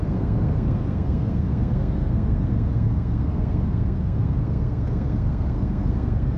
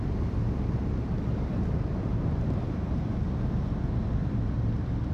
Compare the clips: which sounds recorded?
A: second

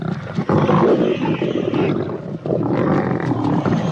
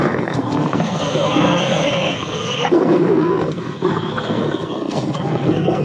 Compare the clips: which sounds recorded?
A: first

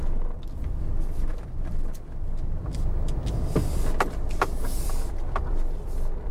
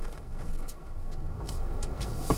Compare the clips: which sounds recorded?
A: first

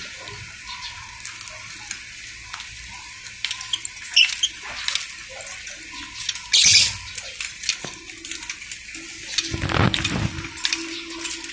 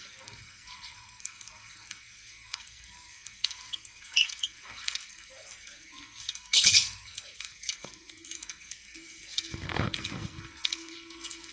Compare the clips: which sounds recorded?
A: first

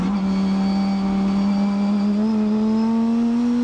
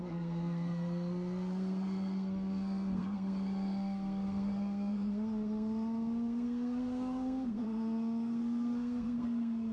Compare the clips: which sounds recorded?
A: first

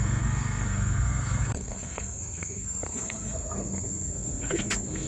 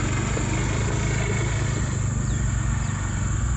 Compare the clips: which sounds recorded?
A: second